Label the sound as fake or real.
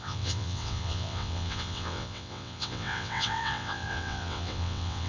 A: fake